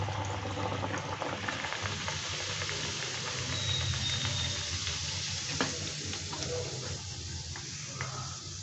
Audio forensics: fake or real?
real